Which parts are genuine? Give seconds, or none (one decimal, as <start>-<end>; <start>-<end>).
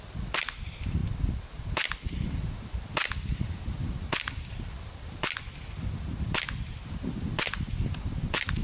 1.0-1.7